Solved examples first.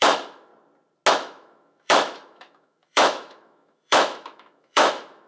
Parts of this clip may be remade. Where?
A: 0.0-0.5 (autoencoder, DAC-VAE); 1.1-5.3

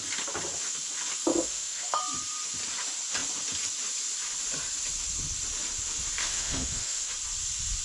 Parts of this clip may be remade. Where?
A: 1.3-2.0 (autoencoder, DAC-VAE); 6.2-7.1

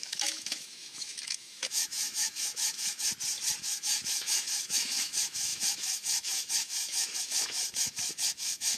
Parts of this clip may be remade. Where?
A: 0.0-3.1 (autoencoder, DAC-VAE); 3.6-8.8

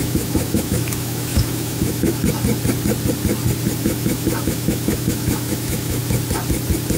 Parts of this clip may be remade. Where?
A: 0.0-2.2 (autoencoder, DAC-VAE); 3.8-6.0

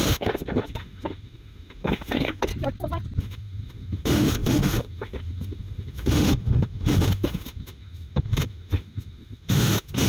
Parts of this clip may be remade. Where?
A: 0.0-2.5 (autoencoder, DAC-VAE); 3.2-10.1